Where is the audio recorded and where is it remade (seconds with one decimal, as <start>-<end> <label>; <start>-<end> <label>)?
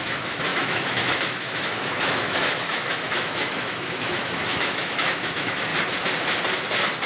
0.0-5.7 remade; 5.7-7.1 recorded